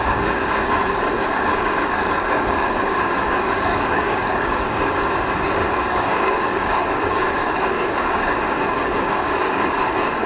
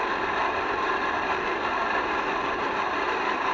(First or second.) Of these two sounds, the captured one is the second